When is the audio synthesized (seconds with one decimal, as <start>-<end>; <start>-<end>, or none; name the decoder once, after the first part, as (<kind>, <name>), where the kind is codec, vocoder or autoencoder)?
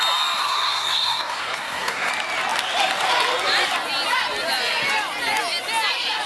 0.4-2.1 (codec, SNAC)